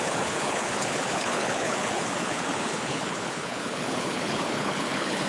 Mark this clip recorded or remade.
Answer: remade